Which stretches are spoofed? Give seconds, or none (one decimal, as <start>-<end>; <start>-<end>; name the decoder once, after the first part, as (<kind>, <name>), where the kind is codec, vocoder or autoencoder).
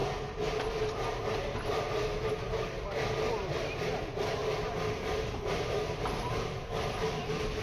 4.0-4.4 (vocoder, BigVGAN v2)